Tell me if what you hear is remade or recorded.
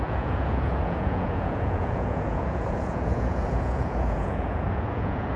remade